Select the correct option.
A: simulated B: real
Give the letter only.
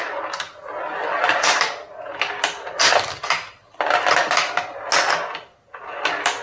B